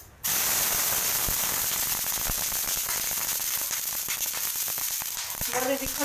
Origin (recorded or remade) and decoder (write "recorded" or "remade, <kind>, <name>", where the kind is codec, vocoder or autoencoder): recorded